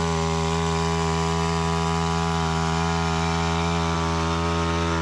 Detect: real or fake real